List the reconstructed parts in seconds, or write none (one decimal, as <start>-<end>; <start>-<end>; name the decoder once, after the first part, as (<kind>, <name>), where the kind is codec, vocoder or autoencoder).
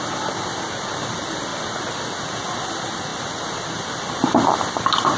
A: none